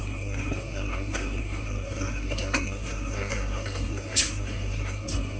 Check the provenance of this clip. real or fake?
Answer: fake